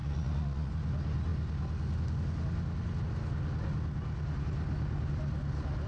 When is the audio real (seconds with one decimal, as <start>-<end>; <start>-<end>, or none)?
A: 0.7-5.9